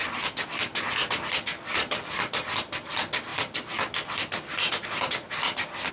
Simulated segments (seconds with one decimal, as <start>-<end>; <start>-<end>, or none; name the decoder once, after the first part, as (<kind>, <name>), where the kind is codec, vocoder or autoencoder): 1.7-2.5 (vocoder, BigVGAN v2)